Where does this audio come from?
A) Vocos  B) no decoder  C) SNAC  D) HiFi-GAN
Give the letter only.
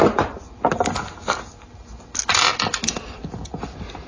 B